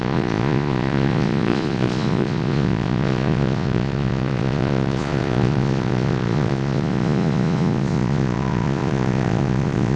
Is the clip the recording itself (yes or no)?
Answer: no